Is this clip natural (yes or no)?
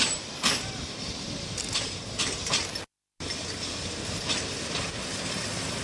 yes